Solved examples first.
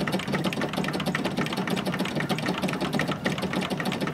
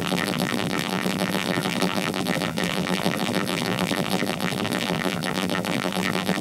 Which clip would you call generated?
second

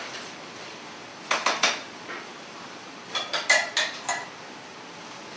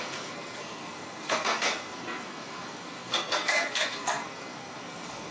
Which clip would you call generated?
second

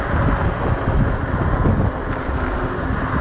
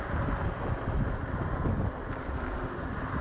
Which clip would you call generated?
second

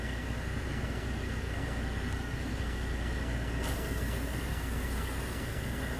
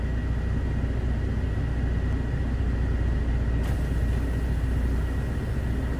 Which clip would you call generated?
first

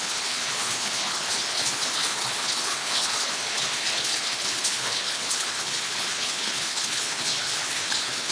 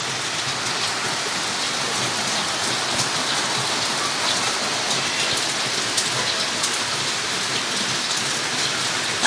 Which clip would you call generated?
first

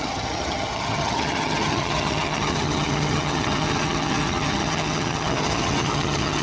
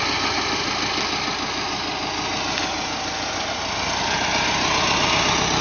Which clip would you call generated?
first